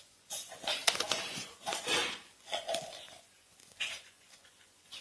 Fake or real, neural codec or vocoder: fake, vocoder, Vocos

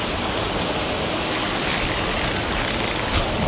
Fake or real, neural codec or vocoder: real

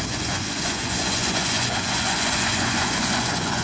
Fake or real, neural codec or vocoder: fake, vocoder, Vocos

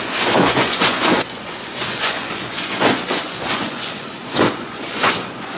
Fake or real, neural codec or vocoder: fake, vocoder, Vocos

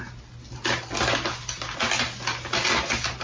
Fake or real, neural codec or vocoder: real